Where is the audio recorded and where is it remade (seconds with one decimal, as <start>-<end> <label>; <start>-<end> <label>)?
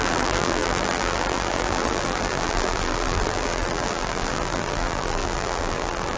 0.0-6.2 remade